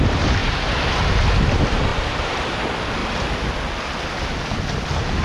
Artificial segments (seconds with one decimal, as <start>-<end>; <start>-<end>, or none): 1.9-2.6